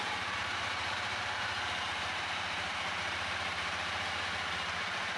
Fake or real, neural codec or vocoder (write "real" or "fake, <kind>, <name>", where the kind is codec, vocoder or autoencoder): fake, vocoder, BigVGAN v2